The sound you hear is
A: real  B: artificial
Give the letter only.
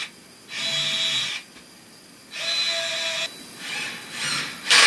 A